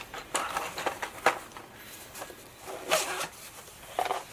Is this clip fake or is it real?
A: real